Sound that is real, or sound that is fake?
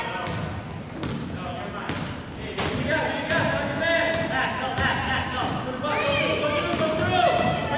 real